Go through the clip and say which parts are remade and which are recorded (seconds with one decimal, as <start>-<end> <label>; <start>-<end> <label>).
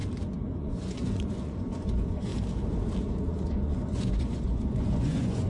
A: 0.0-0.6 recorded; 0.6-2.3 remade; 2.3-3.1 recorded; 3.1-5.5 remade